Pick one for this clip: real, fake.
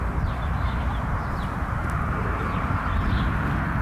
real